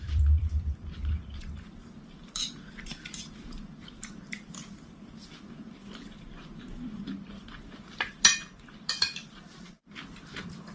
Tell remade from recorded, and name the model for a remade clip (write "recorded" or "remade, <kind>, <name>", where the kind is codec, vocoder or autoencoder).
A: remade, vocoder, BigVGAN v2